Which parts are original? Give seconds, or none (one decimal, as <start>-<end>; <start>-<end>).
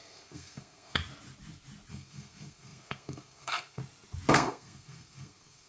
1.0-1.9; 3.8-4.3